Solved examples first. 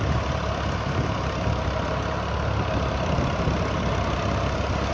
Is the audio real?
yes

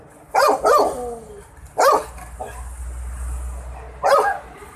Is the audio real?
yes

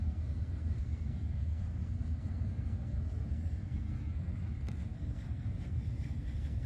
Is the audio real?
no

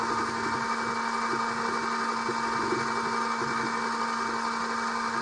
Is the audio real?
yes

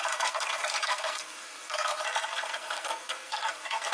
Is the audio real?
no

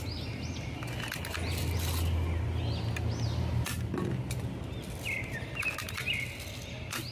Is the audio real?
yes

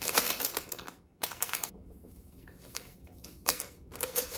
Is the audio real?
no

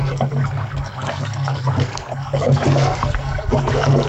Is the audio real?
no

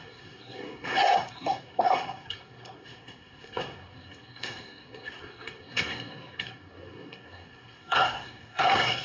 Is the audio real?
no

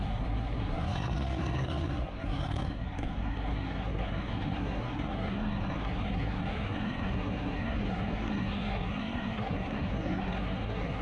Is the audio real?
no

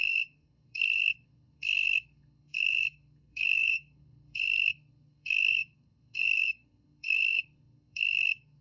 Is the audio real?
no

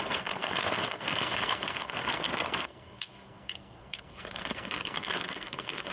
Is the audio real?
no